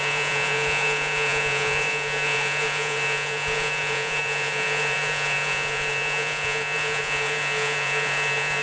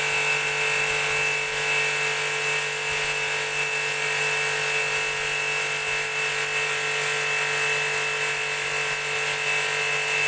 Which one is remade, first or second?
first